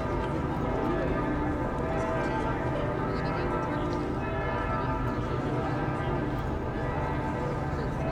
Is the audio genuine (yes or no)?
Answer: yes